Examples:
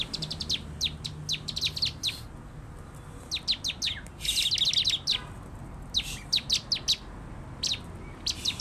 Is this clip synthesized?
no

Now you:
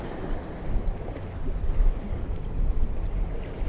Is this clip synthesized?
no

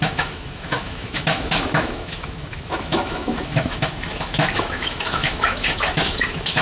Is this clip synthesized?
yes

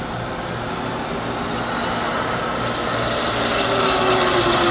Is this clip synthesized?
no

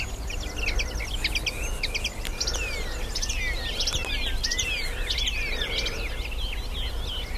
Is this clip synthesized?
no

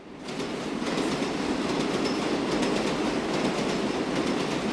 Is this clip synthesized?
no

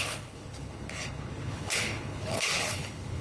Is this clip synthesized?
yes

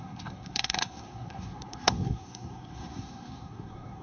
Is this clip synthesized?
yes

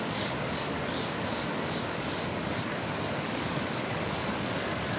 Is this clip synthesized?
yes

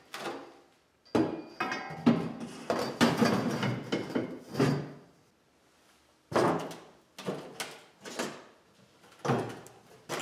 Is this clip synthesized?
no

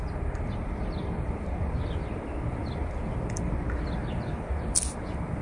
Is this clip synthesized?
yes